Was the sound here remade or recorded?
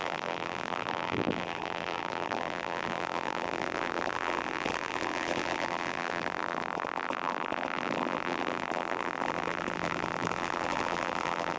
remade